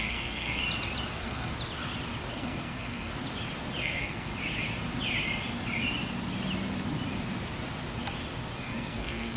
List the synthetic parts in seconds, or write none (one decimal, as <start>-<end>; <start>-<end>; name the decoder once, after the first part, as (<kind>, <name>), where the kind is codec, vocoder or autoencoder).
0.0-0.6 (codec, SNAC); 1.1-1.5; 2.3-3.1; 3.8-4.3; 8.6-9.4